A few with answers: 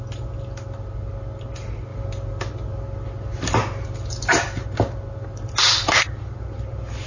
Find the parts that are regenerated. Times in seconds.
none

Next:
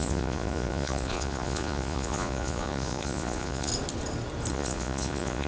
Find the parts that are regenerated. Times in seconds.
0.0-3.7 (vocoder, Vocos); 4.5-5.5